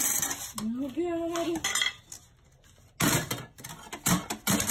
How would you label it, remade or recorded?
recorded